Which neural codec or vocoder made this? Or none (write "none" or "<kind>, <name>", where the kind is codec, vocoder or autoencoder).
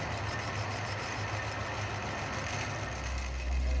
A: none